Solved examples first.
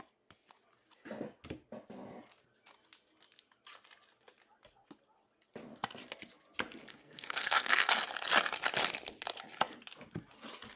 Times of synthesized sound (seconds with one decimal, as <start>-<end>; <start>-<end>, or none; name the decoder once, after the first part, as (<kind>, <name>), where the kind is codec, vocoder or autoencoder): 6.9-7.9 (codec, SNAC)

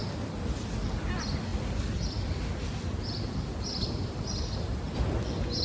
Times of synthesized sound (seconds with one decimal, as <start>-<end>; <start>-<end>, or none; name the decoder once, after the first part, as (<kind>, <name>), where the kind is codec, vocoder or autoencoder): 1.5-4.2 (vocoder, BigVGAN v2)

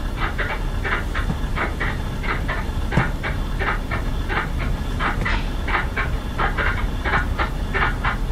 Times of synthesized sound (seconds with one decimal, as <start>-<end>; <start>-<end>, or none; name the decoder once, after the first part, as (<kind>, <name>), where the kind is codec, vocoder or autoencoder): 0.0-7.1 (vocoder, BigVGAN v2)

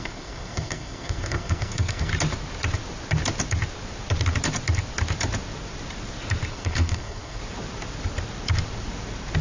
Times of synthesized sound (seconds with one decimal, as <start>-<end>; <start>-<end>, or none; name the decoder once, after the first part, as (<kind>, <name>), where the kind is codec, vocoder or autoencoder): 0.0-2.1 (codec, SNAC); 6.5-7.4

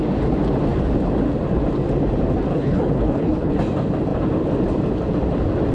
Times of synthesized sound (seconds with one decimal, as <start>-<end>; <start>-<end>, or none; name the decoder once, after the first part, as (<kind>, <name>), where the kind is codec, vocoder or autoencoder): 2.5-3.5 (codec, HILCodec)

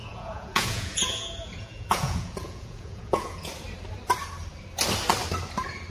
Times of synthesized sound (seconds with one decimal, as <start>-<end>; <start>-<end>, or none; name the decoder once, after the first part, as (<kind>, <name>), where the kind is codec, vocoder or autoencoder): 0.0-3.5 (vocoder, Vocos)

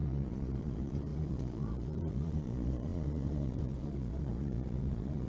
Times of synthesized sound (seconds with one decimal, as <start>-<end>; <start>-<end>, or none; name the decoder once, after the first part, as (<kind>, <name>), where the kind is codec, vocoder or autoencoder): 0.0-5.3 (vocoder, Vocos)